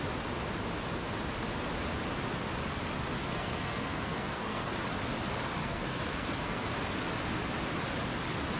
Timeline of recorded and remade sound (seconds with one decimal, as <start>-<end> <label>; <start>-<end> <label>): 0.0-3.2 recorded; 3.2-4.7 remade; 4.7-5.6 recorded; 5.6-6.7 remade; 6.7-8.6 recorded